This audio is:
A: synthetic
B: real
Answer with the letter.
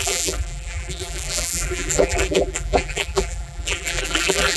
A